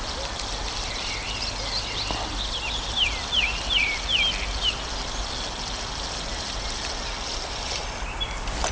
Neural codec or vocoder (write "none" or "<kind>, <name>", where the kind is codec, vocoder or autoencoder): none